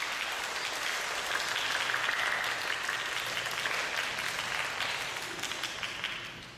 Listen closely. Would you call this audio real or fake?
real